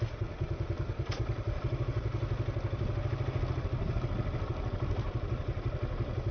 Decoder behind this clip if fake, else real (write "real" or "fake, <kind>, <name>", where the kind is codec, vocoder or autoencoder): real